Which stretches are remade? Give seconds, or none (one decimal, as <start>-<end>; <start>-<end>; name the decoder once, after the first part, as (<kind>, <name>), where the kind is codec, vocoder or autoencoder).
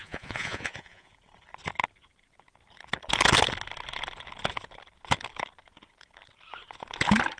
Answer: 0.0-1.1 (vocoder, Vocos)